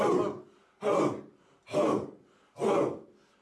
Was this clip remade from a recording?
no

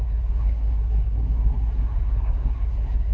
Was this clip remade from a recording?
yes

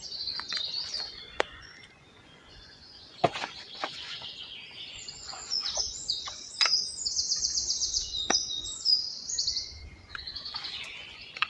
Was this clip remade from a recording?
yes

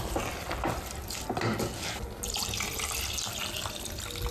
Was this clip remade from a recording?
no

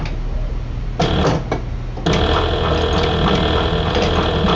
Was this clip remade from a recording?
no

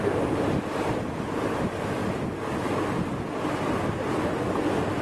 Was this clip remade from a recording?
no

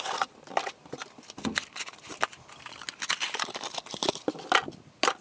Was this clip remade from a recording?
no